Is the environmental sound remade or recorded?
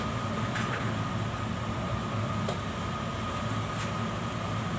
recorded